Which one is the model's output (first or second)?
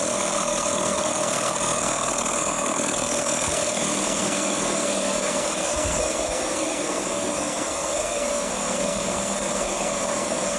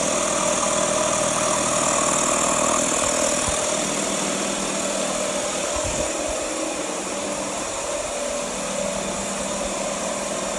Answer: first